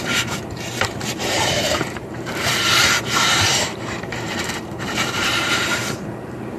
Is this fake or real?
fake